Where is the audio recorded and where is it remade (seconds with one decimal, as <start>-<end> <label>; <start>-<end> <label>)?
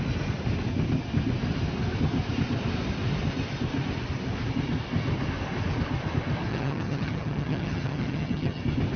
0.0-6.5 recorded; 6.5-8.6 remade; 8.6-9.0 recorded